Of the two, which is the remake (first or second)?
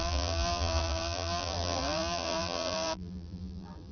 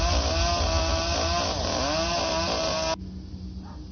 first